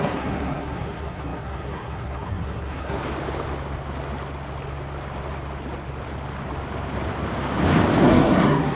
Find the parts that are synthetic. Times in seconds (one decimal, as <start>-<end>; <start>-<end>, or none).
0.0-3.0; 8.0-8.8